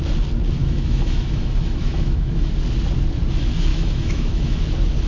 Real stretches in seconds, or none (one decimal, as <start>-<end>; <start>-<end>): 0.0-0.6; 2.5-3.7; 4.6-5.1